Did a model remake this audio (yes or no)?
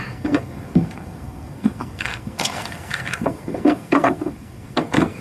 yes